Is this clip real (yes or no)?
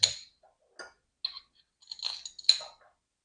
yes